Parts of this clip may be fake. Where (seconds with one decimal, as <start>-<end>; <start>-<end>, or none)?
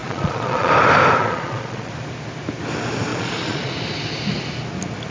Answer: 0.0-0.7; 1.2-1.9; 3.1-3.7